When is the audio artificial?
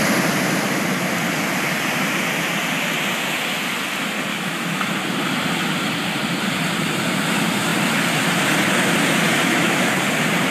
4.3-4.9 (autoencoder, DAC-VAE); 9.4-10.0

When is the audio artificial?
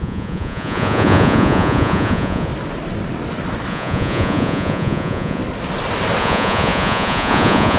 0.0-2.5 (vocoder, Vocos); 3.7-5.4; 6.2-7.8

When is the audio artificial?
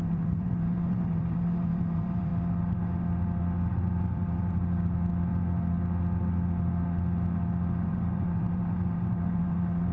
0.0-2.3 (vocoder, BigVGAN v2); 3.7-5.1; 7.9-9.9